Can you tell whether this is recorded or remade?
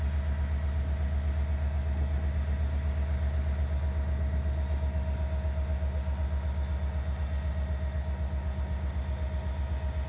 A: recorded